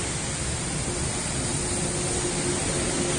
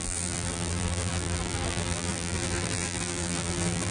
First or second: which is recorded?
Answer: first